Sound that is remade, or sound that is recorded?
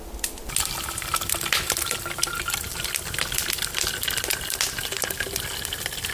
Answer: recorded